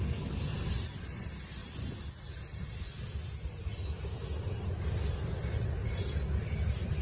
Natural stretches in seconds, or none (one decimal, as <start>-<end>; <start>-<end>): 0.0-7.0